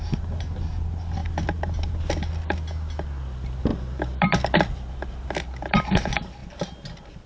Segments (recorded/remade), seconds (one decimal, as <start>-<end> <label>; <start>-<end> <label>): 0.0-7.3 recorded